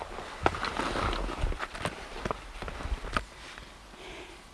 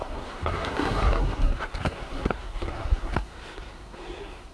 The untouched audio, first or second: first